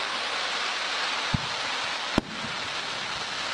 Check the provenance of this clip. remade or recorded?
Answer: recorded